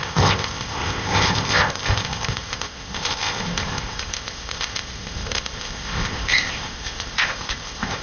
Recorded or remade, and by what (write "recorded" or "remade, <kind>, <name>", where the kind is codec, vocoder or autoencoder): remade, codec, ZipCodec